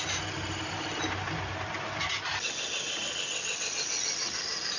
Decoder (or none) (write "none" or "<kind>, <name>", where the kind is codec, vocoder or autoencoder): none